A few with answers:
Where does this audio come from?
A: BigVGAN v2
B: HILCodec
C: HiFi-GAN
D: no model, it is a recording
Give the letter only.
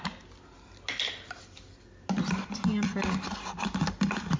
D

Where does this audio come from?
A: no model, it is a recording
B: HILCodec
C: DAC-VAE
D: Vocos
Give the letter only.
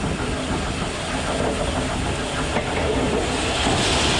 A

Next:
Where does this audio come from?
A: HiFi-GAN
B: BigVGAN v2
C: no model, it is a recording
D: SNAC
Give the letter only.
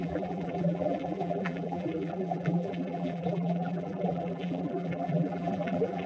B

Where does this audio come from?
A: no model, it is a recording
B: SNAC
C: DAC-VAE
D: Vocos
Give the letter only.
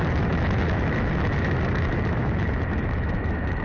C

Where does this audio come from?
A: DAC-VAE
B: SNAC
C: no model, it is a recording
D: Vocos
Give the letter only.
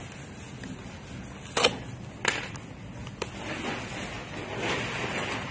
C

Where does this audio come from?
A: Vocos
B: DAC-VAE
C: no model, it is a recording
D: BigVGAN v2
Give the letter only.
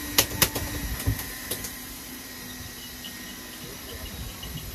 C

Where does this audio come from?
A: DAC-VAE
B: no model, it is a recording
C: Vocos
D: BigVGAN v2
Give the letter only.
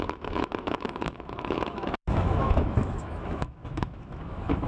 A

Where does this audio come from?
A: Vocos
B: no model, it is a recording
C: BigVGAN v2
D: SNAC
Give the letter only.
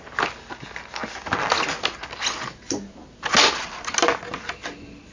B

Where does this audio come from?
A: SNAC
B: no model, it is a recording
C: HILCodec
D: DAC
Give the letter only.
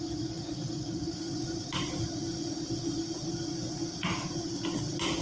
B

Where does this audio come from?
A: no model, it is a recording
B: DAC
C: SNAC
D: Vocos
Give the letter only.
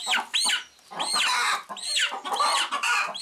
A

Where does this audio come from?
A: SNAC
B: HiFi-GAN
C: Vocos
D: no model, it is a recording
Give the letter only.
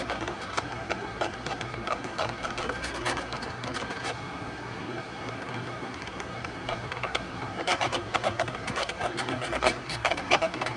A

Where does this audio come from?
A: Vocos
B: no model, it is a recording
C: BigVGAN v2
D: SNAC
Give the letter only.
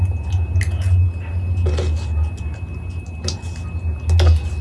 B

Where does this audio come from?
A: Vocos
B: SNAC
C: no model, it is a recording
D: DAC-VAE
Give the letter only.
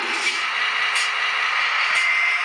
C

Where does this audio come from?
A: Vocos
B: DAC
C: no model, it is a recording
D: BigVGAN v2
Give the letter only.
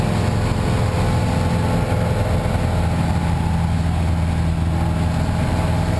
C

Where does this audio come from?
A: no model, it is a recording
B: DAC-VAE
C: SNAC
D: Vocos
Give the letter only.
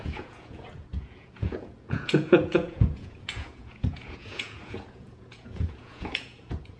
D